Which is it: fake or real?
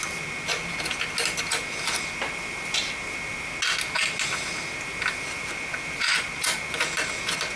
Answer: real